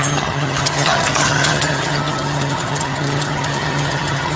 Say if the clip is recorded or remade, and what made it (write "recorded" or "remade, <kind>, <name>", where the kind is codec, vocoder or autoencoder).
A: remade, vocoder, HiFi-GAN